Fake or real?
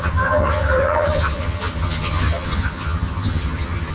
fake